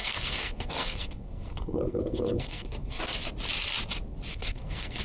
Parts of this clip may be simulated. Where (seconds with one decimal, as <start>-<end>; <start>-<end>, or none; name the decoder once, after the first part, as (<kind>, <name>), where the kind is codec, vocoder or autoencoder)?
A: 0.0-3.0 (codec, SNAC); 4.3-5.0